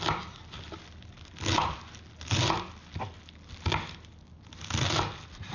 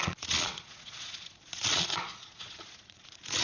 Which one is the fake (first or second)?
second